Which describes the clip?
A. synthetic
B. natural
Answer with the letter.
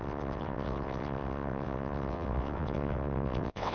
A